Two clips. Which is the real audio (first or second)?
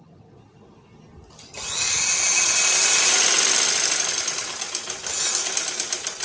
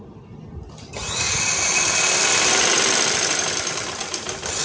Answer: first